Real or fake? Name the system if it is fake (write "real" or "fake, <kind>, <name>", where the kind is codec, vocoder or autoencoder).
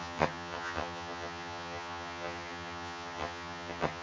fake, vocoder, HiFi-GAN